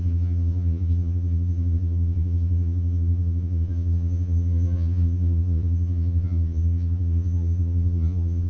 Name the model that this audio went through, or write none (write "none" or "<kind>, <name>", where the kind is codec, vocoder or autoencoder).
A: vocoder, Vocos